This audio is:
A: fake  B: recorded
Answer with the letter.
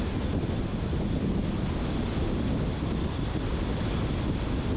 B